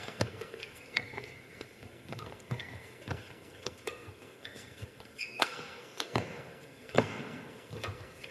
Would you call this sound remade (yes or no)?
yes